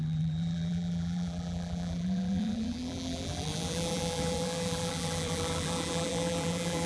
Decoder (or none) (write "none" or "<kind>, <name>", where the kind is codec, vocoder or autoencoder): vocoder, BigVGAN v2